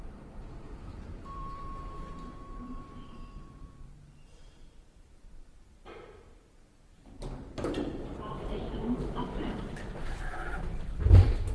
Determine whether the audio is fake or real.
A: fake